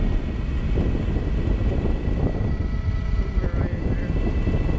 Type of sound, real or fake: real